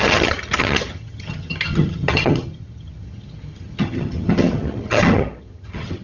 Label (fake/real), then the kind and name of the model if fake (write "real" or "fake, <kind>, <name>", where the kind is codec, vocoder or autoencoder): fake, vocoder, HiFi-GAN